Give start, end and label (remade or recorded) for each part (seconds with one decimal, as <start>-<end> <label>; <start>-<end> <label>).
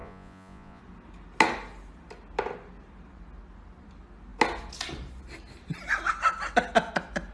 0.0-0.8 remade; 0.8-7.3 recorded